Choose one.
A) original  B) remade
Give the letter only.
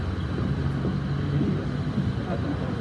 A